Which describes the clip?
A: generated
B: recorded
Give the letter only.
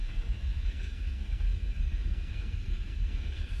A